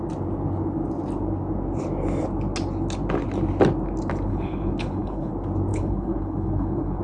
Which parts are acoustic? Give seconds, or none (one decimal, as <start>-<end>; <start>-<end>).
0.0-4.3; 5.3-5.7